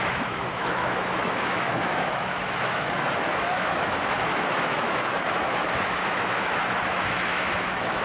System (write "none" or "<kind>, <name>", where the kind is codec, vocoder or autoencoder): autoencoder, DAC-VAE